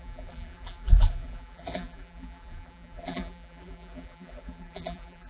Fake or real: fake